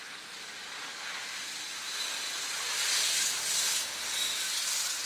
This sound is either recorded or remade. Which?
recorded